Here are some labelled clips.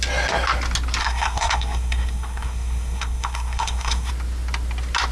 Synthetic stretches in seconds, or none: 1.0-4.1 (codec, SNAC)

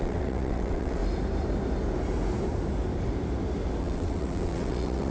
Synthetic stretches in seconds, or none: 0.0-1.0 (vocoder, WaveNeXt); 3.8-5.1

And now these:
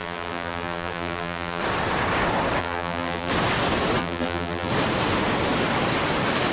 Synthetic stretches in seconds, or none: 0.0-1.6 (vocoder, BigVGAN v2); 2.6-3.3; 4.0-4.7

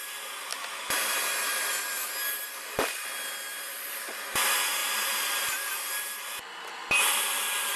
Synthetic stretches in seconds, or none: none